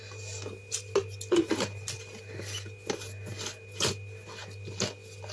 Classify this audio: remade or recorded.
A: recorded